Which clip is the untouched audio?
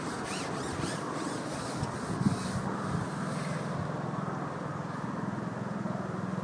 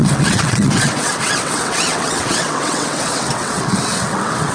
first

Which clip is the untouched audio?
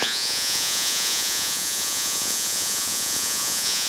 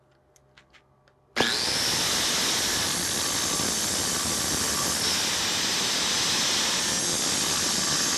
second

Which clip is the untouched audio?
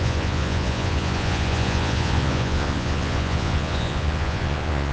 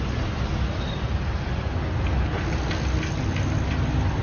second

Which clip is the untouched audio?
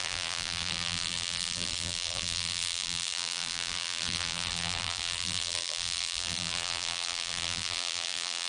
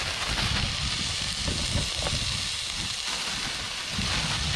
second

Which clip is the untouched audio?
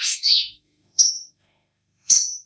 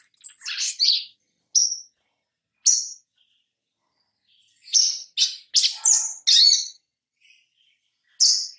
second